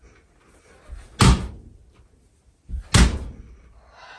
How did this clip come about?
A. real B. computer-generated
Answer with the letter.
A